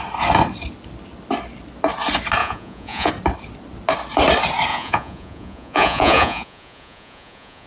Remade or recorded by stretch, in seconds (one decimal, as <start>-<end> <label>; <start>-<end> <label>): 0.0-2.4 recorded; 2.4-3.1 remade; 3.1-4.7 recorded; 4.7-7.7 remade